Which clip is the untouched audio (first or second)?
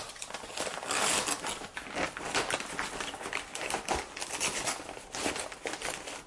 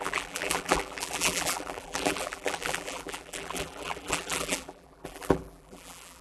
first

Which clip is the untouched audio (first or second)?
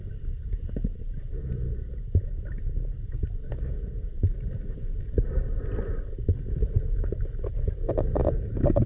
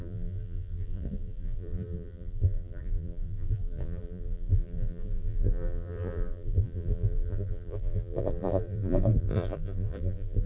first